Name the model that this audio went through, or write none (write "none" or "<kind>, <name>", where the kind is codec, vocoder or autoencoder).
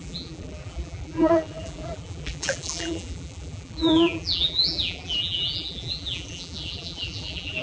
vocoder, BigVGAN v2